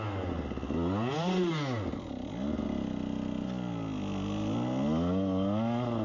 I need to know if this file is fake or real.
real